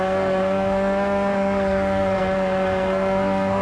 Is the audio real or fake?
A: fake